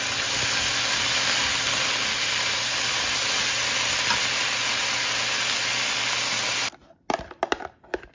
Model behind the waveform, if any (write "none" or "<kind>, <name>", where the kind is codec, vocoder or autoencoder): none